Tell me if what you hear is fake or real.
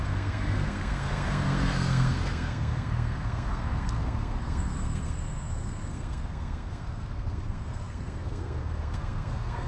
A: fake